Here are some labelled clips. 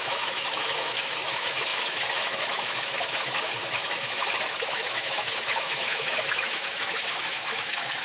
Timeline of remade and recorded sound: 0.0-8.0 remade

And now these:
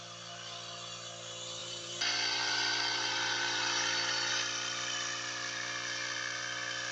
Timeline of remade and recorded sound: 0.0-1.6 recorded; 1.6-4.3 remade; 4.3-6.9 recorded

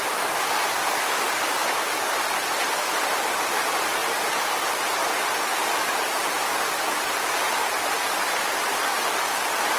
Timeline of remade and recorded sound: 0.0-4.0 remade; 4.0-8.0 recorded; 8.0-9.8 remade

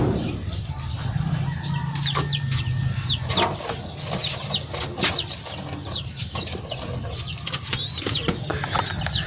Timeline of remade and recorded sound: 0.0-9.3 recorded

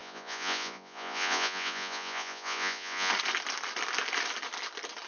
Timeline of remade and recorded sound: 0.0-3.1 remade; 3.1-5.1 recorded

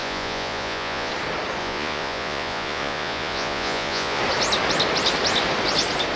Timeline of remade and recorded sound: 0.0-1.1 remade; 1.1-1.6 recorded; 1.6-4.2 remade; 4.2-6.2 recorded

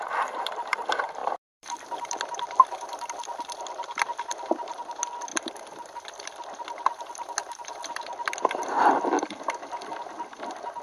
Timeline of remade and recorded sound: 0.0-1.2 recorded; 1.2-3.1 remade; 3.1-10.8 recorded